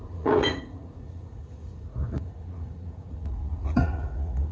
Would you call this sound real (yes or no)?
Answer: no